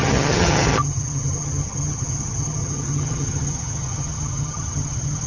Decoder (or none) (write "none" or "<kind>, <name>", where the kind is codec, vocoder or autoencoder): vocoder, HiFi-GAN